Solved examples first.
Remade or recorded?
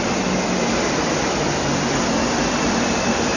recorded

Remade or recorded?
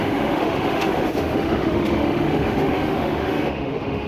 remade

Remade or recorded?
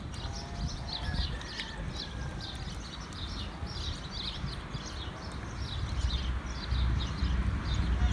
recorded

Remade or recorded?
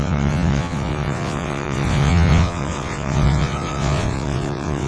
remade